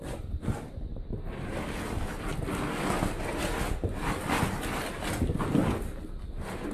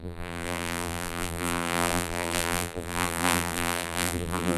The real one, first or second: first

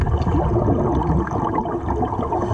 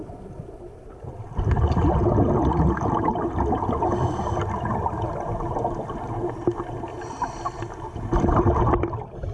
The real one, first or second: first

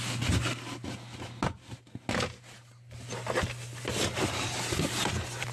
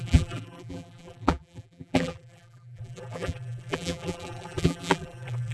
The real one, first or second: first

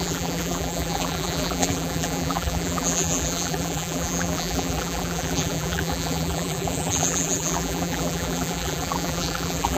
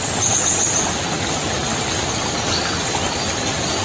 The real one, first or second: second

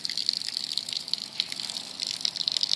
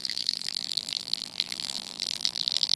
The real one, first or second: first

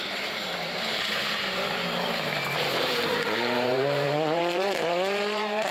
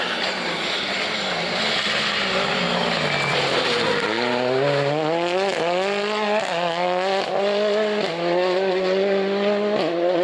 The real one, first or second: second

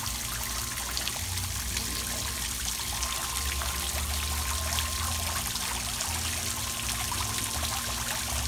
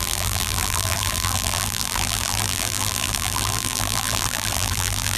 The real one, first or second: first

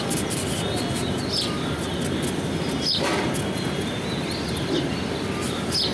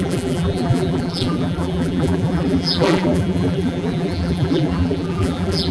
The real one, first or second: first